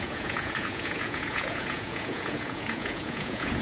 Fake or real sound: fake